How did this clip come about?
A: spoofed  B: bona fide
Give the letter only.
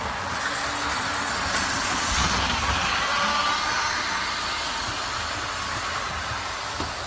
B